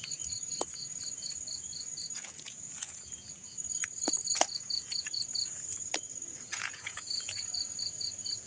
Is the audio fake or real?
fake